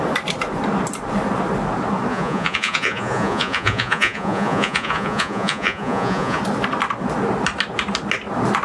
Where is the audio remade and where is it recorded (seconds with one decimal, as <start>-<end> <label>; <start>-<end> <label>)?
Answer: 0.0-2.1 recorded; 2.1-6.4 remade; 6.4-8.6 recorded